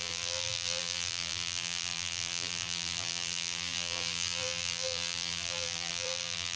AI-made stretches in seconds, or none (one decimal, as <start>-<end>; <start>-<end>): 0.0-6.6